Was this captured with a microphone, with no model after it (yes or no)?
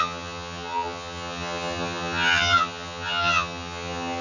no